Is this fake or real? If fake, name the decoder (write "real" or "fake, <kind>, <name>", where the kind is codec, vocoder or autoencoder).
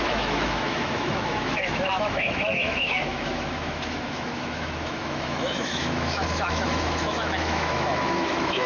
fake, autoencoder, DAC-VAE